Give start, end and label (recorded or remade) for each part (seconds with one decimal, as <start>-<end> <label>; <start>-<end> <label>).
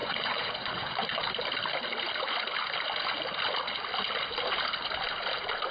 0.0-1.2 remade; 1.2-5.7 recorded